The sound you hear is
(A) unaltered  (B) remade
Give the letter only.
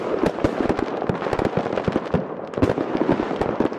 A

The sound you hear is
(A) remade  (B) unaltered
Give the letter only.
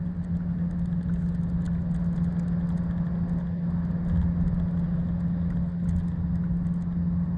B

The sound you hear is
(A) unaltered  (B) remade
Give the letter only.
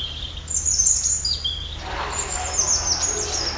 A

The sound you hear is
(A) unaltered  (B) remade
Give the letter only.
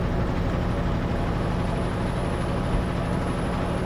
A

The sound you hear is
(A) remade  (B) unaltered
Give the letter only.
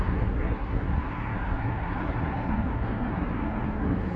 A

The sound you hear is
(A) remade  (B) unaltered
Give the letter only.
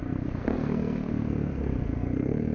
A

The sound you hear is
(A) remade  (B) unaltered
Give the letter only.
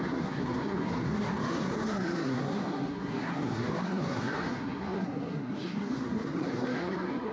A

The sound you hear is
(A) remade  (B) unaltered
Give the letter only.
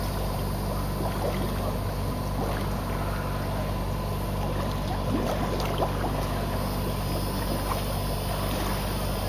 B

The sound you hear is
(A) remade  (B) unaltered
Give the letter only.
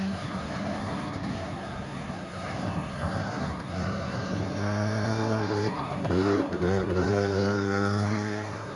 A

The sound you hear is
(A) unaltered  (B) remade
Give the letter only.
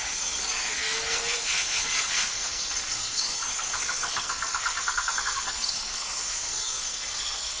B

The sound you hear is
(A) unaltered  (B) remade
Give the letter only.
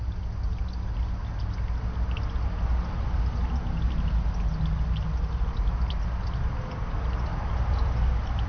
A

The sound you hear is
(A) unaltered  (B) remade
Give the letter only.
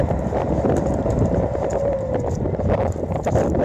A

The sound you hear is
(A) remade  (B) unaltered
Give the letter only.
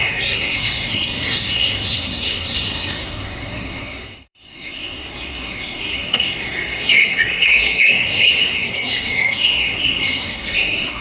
A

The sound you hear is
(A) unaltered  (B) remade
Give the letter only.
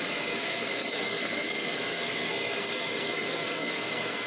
B